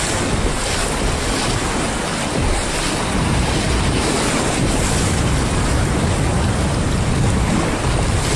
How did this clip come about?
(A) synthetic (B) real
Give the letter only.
B